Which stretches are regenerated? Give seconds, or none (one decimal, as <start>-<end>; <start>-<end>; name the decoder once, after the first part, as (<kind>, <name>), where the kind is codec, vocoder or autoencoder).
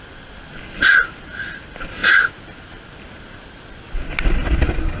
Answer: none